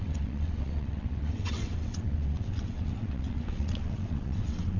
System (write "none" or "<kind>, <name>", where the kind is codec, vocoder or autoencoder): vocoder, WaveNeXt